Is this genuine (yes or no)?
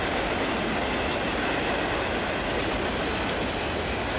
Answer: yes